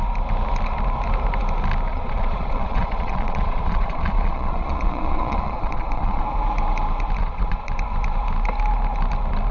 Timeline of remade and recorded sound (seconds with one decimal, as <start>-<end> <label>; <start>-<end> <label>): 0.0-1.9 recorded; 1.9-6.2 remade; 6.2-7.2 recorded; 7.2-7.7 remade; 7.7-9.5 recorded

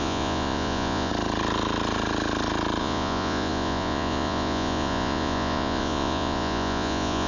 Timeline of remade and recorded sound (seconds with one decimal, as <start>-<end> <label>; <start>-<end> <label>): 0.0-1.1 remade; 1.1-2.8 recorded; 2.8-7.3 remade

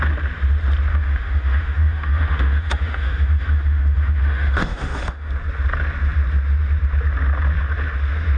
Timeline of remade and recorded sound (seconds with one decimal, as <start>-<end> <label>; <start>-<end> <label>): 0.0-0.9 recorded; 0.9-5.3 remade; 5.3-8.4 recorded